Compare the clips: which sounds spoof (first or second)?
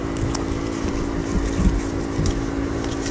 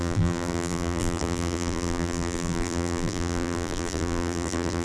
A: second